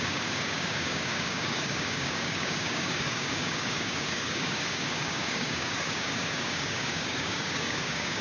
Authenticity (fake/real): fake